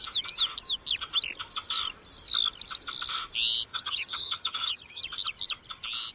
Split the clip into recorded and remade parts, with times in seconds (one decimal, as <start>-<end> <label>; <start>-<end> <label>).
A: 0.0-3.7 recorded; 3.7-5.0 remade; 5.0-6.1 recorded

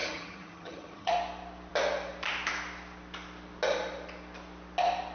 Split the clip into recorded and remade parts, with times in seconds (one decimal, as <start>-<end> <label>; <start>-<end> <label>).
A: 0.0-1.1 remade; 1.1-5.1 recorded

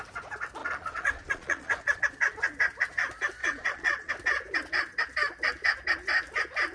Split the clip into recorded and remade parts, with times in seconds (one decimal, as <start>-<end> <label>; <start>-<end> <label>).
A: 0.0-0.6 recorded; 0.6-2.0 remade; 2.0-3.4 recorded; 3.4-4.1 remade; 4.1-6.7 recorded

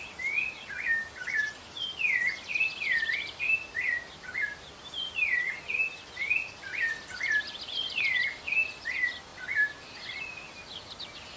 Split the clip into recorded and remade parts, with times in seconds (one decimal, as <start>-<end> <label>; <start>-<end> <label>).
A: 0.0-2.5 recorded; 2.5-6.9 remade; 6.9-11.4 recorded

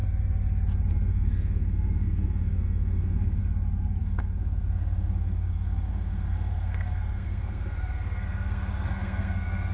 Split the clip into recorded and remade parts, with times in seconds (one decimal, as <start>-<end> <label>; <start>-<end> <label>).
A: 0.0-1.1 recorded; 1.1-3.4 remade; 3.4-4.0 recorded; 4.0-9.7 remade

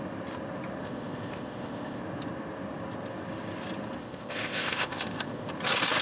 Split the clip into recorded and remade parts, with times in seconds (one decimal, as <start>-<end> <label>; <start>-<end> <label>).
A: 0.0-0.8 recorded; 0.8-2.0 remade; 2.0-4.0 recorded; 4.0-5.5 remade; 5.5-6.0 recorded

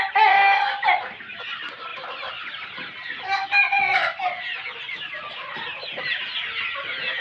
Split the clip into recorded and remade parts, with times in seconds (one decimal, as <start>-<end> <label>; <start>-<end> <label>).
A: 0.0-1.9 recorded; 1.9-6.2 remade; 6.2-7.2 recorded

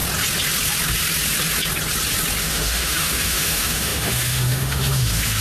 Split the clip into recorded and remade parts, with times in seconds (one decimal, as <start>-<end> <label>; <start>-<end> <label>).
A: 0.0-2.4 recorded; 2.4-5.4 remade